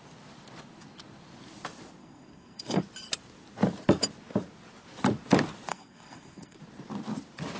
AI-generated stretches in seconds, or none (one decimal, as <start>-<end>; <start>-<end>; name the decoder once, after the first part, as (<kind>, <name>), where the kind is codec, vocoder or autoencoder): 2.0-2.8 (codec, SNAC); 5.7-6.6